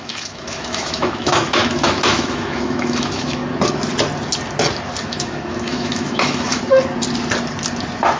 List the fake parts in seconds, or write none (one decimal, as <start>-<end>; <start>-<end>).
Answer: 0.0-3.4; 5.1-6.6